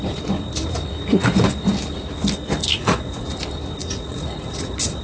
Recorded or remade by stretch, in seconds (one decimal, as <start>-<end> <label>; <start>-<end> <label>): 0.0-2.7 recorded; 2.7-3.3 remade; 3.3-3.8 recorded; 3.8-5.0 remade